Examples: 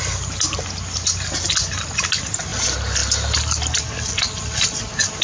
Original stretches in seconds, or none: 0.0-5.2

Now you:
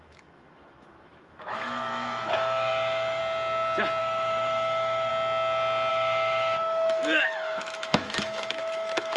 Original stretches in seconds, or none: 3.2-4.0; 5.1-5.9

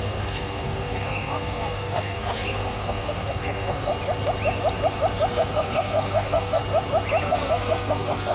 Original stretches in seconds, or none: 3.9-5.3; 6.6-7.2

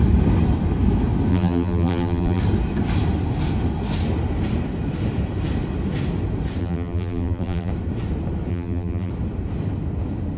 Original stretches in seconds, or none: 0.0-1.3; 2.4-6.6; 7.7-8.5; 9.1-10.4

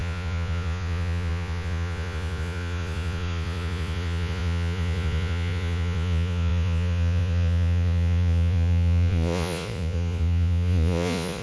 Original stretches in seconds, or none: none